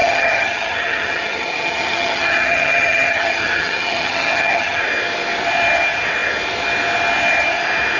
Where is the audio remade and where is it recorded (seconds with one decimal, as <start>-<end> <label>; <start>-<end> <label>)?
0.0-4.8 remade; 4.8-8.0 recorded